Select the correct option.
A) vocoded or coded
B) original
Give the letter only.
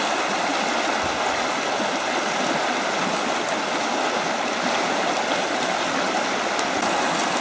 B